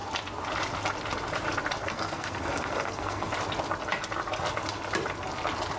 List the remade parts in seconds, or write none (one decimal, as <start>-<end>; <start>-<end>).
1.8-3.3